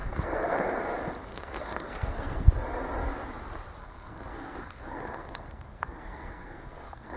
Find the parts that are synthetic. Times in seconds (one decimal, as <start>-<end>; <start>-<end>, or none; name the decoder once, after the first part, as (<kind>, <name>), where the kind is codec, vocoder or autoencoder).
0.0-0.8 (codec, SNAC); 1.3-2.5; 3.8-7.2